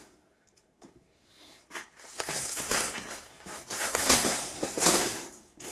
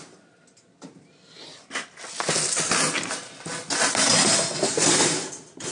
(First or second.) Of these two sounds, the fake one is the first